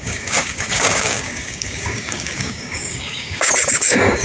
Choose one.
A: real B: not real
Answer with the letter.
B